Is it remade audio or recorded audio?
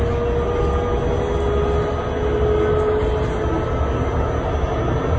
recorded